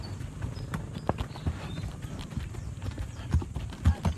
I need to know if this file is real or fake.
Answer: real